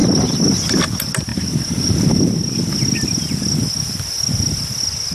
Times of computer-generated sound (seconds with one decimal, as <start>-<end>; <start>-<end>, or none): none